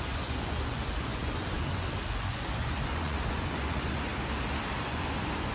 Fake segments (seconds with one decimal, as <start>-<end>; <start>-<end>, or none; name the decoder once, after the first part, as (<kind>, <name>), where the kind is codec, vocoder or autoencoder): 0.0-4.1 (vocoder, Vocos); 4.8-5.5